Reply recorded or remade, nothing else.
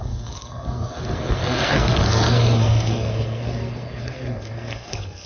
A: remade